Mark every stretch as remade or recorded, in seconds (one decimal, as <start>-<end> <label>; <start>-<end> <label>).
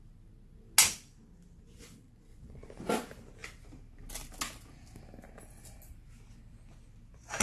0.0-2.3 recorded; 2.3-2.8 remade; 2.8-7.4 recorded